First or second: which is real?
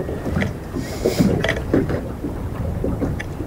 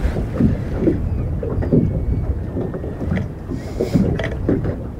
second